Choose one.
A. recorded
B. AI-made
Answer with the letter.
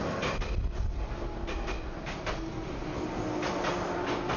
A